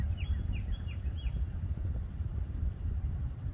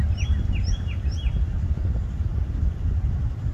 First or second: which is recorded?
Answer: second